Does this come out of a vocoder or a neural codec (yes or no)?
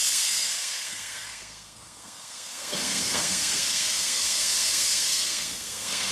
yes